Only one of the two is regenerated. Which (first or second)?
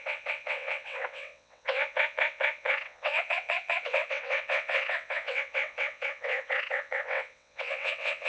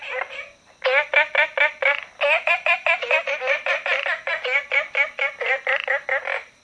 first